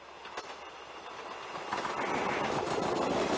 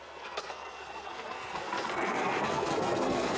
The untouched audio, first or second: first